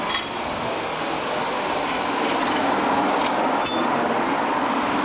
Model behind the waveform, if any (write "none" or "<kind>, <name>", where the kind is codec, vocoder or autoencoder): none